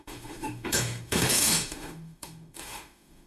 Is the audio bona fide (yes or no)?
no